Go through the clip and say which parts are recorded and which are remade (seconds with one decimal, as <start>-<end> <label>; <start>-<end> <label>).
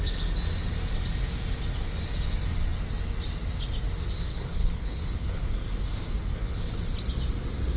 0.0-4.3 recorded; 4.3-5.4 remade; 5.4-6.3 recorded; 6.3-6.8 remade; 6.8-7.8 recorded